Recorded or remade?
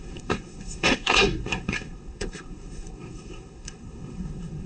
remade